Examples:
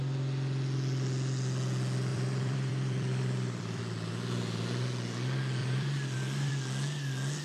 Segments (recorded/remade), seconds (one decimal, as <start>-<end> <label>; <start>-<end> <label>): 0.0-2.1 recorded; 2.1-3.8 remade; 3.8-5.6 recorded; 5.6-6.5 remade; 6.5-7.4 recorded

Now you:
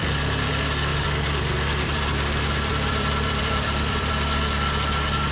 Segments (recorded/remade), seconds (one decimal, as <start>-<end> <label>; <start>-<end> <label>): 0.0-0.5 remade; 0.5-0.9 recorded; 0.9-4.1 remade; 4.1-5.3 recorded

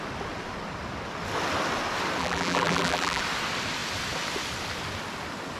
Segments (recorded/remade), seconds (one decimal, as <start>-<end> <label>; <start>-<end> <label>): 0.0-2.2 recorded; 2.2-3.2 remade; 3.2-5.6 recorded